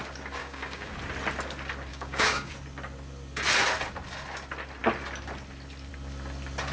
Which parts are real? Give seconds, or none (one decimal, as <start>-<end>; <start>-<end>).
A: 0.0-0.4; 0.9-1.9; 2.5-6.7